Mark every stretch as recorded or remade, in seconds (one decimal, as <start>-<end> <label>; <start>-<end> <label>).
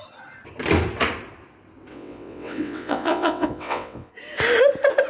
0.0-1.9 recorded; 1.9-4.1 remade; 4.1-5.1 recorded